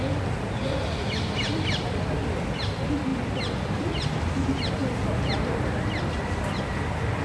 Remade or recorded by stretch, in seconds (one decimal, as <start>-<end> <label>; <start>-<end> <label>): 0.0-7.2 recorded